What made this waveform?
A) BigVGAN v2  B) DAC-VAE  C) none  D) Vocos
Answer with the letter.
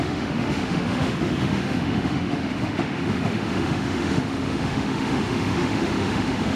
B